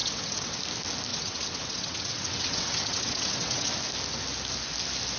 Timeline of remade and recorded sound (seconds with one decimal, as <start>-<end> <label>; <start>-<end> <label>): 0.0-0.6 remade; 0.6-1.1 recorded; 1.1-3.7 remade; 3.7-5.2 recorded